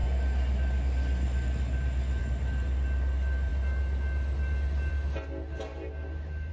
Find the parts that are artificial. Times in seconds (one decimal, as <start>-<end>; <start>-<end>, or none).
none